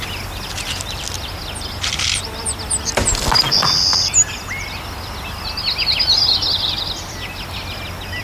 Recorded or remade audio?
recorded